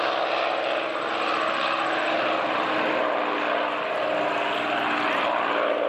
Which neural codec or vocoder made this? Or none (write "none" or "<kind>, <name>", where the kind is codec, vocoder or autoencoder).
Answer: none